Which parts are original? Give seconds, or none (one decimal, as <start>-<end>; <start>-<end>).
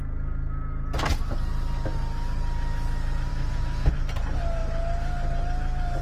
0.0-3.3; 3.9-6.0